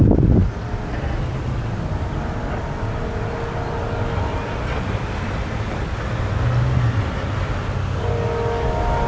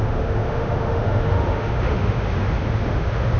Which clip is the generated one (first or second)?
second